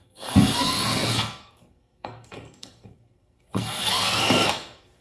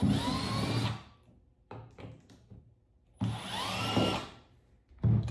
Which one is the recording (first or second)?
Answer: second